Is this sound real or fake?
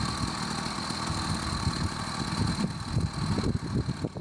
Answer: real